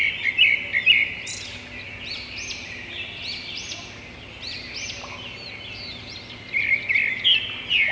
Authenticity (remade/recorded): recorded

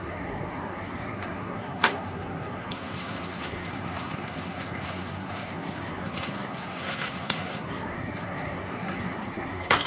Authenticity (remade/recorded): remade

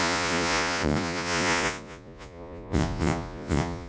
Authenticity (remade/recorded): remade